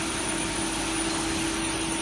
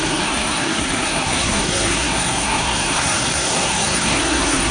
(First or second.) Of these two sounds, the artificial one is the second